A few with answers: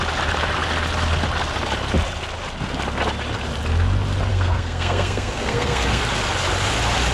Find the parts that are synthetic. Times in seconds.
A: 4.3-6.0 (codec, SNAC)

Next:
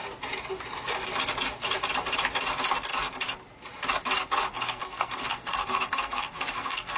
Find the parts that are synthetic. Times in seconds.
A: 4.5-7.0 (codec, SNAC)

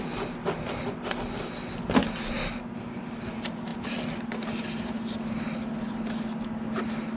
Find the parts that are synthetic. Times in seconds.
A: none

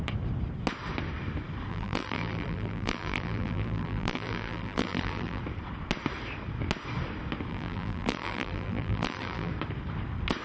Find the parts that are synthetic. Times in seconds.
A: 1.7-5.4 (vocoder, BigVGAN v2); 7.5-9.5

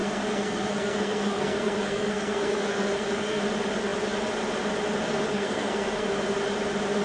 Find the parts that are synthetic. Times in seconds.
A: 0.0-3.4 (codec, SNAC); 5.3-6.1